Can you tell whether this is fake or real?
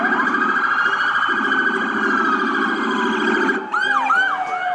real